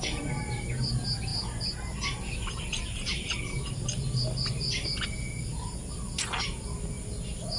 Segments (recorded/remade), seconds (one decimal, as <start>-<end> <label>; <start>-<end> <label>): 0.0-7.6 recorded